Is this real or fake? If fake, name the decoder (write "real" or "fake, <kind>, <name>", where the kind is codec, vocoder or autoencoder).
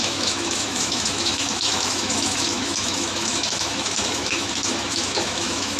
fake, autoencoder, DAC-VAE